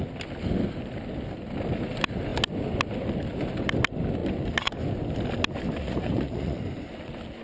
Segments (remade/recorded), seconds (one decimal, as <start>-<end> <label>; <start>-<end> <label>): 0.0-5.8 recorded; 5.8-6.6 remade; 6.6-7.4 recorded

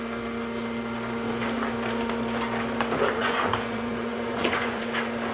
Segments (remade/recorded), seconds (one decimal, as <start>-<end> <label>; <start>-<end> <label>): 0.0-3.2 recorded; 3.2-4.8 remade; 4.8-5.3 recorded

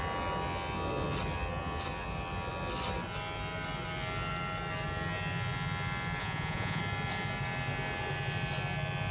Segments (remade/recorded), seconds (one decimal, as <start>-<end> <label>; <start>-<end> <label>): 0.0-6.2 recorded; 6.2-6.8 remade; 6.8-9.1 recorded

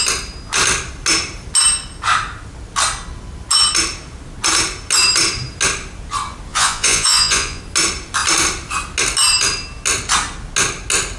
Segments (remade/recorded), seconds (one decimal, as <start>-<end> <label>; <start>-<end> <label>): 0.0-6.5 recorded; 6.5-7.6 remade; 7.6-11.2 recorded

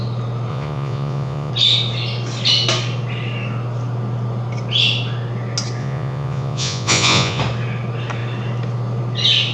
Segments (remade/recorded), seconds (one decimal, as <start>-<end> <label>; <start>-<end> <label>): 0.0-0.5 recorded; 0.5-1.5 remade; 1.5-5.8 recorded; 5.8-7.4 remade; 7.4-9.5 recorded

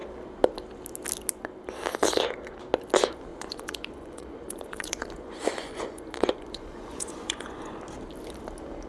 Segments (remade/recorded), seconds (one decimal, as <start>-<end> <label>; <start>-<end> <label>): 0.0-3.3 recorded; 3.3-7.8 remade; 7.8-8.9 recorded

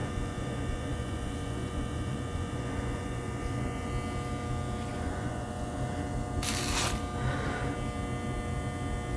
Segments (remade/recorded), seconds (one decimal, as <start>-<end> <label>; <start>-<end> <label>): 0.0-3.9 remade; 3.9-4.9 recorded; 4.9-5.8 remade; 5.8-9.2 recorded

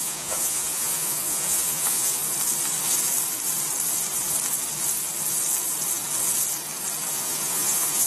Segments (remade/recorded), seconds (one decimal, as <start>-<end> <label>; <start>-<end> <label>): 0.0-2.2 remade; 2.2-7.1 recorded; 7.1-8.1 remade